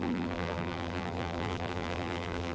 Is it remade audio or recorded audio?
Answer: remade